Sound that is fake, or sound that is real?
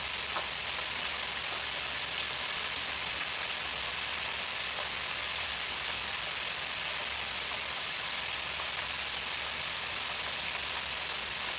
real